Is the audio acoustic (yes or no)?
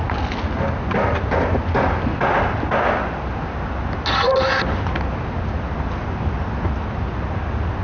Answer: yes